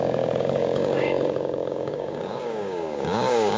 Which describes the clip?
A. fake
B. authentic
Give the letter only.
A